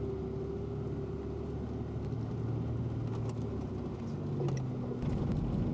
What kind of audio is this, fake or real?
real